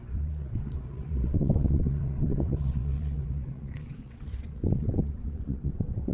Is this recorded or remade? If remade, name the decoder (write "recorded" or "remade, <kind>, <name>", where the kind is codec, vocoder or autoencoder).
remade, vocoder, WaveNeXt